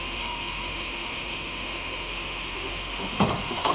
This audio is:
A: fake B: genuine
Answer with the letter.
A